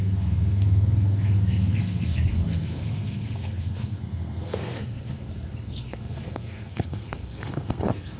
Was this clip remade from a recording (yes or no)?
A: yes